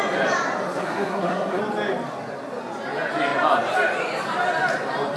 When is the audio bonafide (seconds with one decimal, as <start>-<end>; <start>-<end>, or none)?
0.0-0.8; 1.6-5.2